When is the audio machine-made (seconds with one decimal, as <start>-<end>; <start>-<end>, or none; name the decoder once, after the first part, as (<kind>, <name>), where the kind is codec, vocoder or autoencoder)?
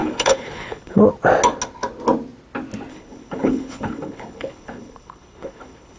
0.0-1.0 (codec, HILCodec); 2.9-6.0